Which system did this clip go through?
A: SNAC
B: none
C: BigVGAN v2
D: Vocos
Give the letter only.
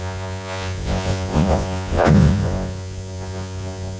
D